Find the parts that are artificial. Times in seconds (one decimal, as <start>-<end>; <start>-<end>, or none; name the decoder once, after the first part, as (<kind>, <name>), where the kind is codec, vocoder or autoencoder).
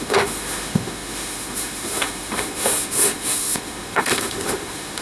0.0-5.0 (autoencoder, DAC-VAE)